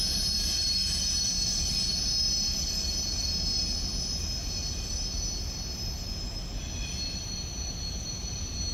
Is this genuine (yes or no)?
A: yes